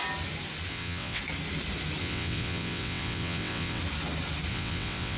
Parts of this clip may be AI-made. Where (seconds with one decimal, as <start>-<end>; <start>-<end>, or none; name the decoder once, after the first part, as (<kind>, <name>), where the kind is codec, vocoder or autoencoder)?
0.7-1.2 (vocoder, WaveNeXt); 2.0-3.8; 4.5-5.2